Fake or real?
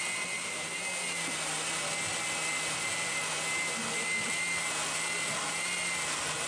real